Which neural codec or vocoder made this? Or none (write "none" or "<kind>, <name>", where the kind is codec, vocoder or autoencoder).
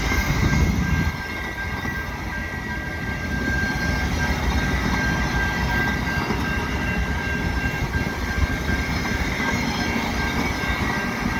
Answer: none